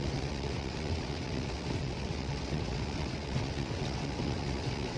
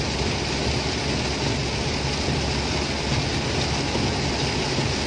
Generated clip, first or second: first